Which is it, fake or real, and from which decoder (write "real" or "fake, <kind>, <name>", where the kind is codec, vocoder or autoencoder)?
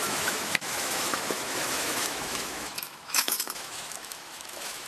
fake, autoencoder, DAC-VAE